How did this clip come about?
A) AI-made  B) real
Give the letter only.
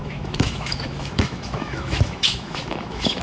A